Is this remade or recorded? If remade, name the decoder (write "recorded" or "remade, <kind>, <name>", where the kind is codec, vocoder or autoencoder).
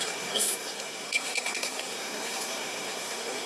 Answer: remade, codec, SNAC